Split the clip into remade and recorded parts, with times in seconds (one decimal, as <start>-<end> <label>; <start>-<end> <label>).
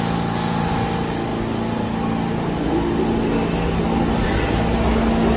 0.0-5.4 recorded